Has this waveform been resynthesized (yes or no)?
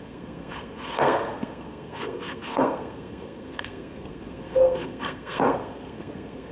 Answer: yes